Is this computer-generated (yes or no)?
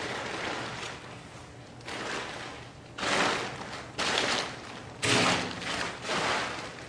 no